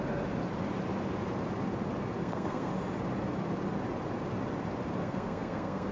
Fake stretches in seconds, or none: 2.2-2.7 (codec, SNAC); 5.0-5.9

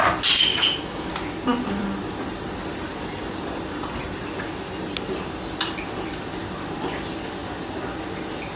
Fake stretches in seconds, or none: 0.5-1.1 (autoencoder, DAC-VAE)

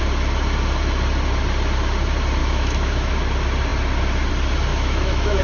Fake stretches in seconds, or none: 2.4-3.1 (autoencoder, DAC-VAE); 4.7-5.4

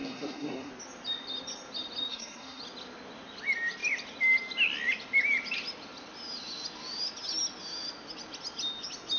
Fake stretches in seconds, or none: 0.0-0.7 (codec, SNAC); 2.1-2.6